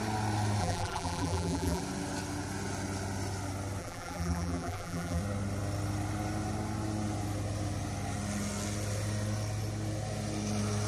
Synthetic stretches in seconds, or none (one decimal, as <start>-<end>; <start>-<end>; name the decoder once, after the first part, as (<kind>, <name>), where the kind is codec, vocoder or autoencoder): 0.6-1.8 (vocoder, BigVGAN v2); 3.8-5.2